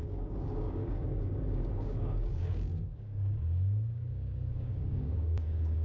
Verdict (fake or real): fake